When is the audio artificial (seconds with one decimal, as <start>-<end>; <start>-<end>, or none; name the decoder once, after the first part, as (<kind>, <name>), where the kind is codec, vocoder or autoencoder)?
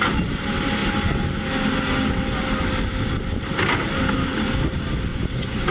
5.1-5.7 (vocoder, Vocos)